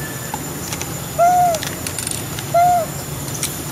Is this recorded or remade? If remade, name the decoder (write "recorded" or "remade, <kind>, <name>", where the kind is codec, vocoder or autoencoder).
recorded